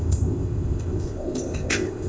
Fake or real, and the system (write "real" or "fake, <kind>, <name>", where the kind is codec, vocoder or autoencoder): fake, codec, ZipCodec